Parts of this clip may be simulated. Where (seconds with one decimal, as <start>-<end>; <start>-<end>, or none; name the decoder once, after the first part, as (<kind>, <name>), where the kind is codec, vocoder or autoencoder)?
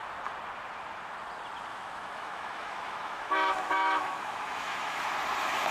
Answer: 1.7-5.1 (autoencoder, DAC-VAE)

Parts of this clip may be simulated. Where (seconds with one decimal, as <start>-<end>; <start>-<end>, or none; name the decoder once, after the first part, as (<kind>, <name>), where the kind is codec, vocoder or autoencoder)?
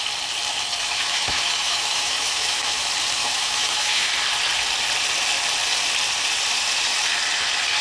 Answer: 0.8-2.8 (autoencoder, DAC-VAE); 3.2-4.1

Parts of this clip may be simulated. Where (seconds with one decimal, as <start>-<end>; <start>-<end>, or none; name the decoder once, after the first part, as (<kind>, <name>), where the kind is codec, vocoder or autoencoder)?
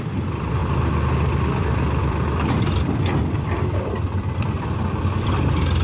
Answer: 0.0-5.8 (vocoder, BigVGAN v2)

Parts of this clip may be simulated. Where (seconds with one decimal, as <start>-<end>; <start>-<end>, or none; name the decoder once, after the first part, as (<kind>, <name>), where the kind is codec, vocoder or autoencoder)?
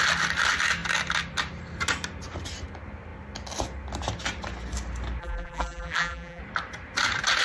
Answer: 5.2-6.4 (vocoder, BigVGAN v2)